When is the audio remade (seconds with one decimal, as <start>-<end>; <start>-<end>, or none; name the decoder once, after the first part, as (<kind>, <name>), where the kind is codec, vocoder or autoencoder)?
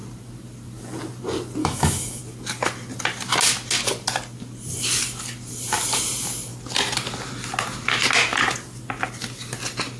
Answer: 1.6-2.2 (autoencoder, DAC-VAE)